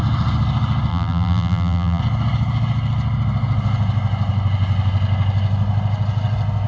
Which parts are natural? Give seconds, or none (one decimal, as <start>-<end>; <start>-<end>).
0.0-0.9; 2.0-6.7